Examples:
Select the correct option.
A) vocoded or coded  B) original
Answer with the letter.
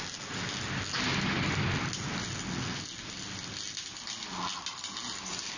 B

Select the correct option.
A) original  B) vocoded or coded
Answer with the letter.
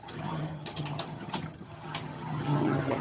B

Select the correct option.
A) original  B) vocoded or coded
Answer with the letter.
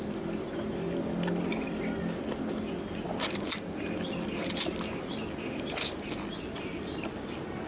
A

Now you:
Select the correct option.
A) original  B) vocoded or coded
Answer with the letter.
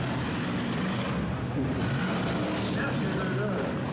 A